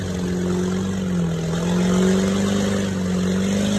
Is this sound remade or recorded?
recorded